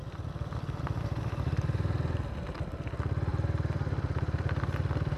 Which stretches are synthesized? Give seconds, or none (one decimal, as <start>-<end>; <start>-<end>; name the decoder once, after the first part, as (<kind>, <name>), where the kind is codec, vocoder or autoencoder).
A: 3.3-5.2 (vocoder, BigVGAN v2)